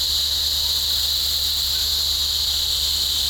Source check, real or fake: real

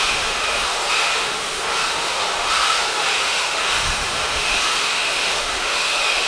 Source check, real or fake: fake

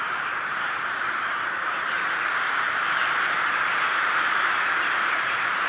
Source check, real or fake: fake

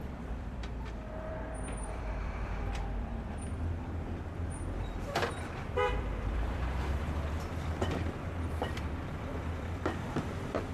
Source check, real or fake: fake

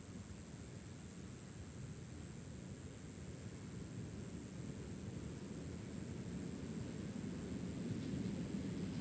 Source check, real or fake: real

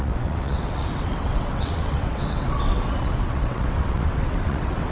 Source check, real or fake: fake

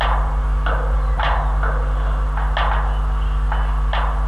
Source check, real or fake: real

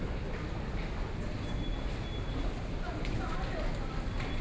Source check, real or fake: real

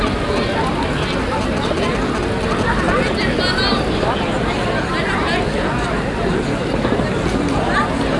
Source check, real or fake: real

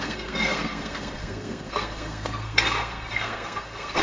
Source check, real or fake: fake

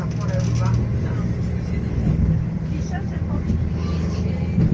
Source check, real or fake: real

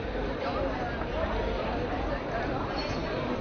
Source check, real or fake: real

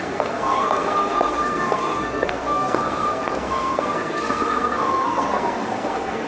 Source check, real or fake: fake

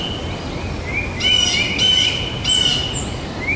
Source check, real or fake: real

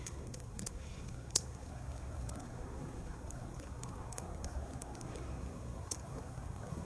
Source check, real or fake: fake